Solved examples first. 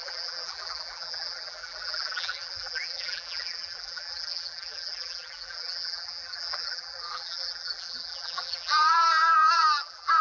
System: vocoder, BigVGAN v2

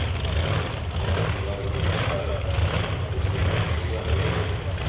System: none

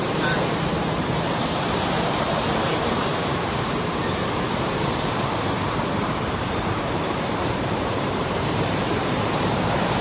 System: vocoder, BigVGAN v2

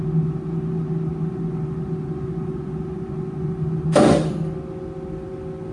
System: none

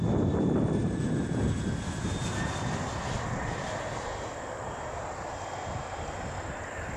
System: none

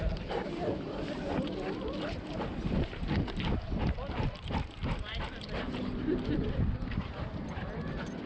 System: vocoder, BigVGAN v2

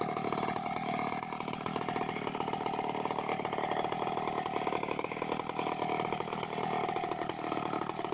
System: none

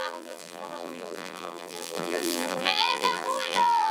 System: vocoder, BigVGAN v2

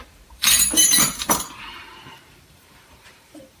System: vocoder, BigVGAN v2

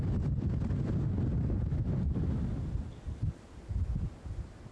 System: none